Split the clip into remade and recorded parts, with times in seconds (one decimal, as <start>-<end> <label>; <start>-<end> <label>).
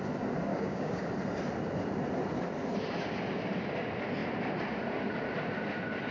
0.0-0.5 recorded; 0.5-1.1 remade; 1.1-6.1 recorded